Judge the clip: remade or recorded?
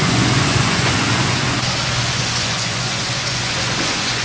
remade